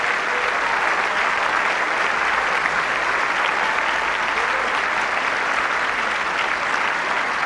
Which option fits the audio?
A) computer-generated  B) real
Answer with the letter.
B